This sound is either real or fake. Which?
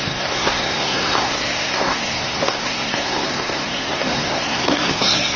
fake